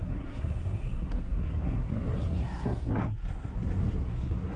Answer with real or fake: fake